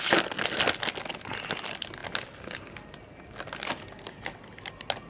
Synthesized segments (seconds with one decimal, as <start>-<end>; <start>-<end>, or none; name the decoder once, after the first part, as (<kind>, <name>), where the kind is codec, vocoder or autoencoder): none